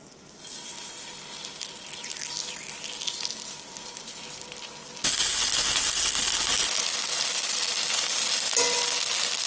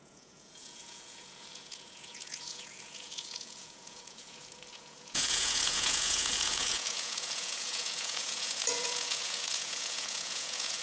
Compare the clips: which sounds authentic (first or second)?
first